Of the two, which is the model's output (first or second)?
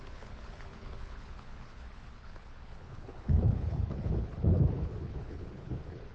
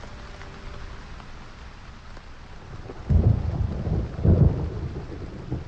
first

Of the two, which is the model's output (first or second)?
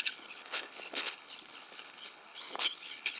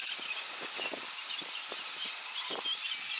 first